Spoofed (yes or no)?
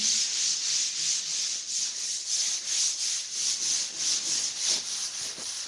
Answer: no